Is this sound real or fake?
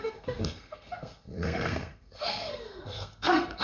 fake